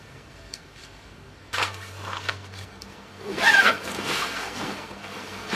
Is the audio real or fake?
fake